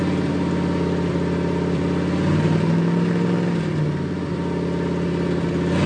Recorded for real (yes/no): yes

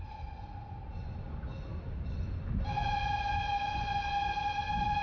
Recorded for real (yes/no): yes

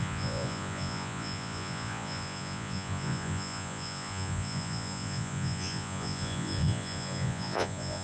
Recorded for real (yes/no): no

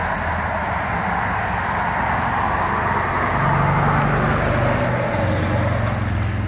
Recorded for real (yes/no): yes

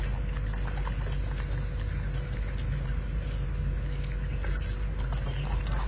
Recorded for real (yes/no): yes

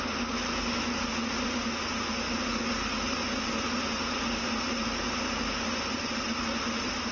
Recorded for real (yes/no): yes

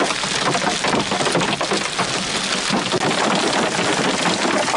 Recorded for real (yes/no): yes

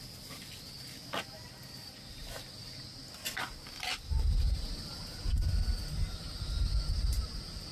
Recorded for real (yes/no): yes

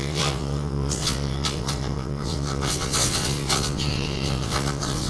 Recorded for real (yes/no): no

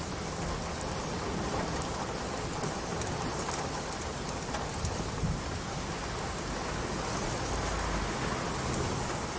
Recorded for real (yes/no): yes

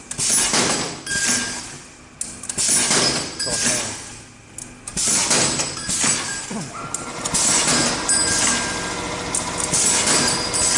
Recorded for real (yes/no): yes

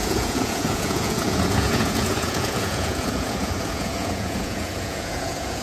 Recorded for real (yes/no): no